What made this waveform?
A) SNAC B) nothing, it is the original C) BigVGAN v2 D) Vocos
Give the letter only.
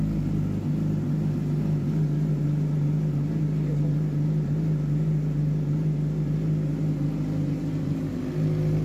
B